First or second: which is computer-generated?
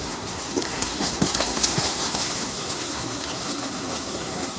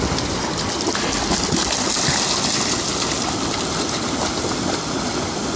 first